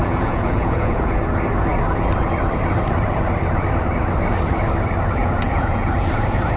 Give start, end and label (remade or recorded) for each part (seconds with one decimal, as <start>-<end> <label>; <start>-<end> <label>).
0.0-1.2 remade; 1.2-5.2 recorded; 5.2-5.9 remade; 5.9-6.6 recorded